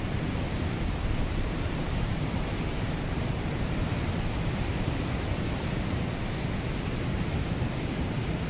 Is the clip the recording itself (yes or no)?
no